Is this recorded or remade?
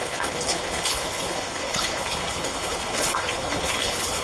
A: remade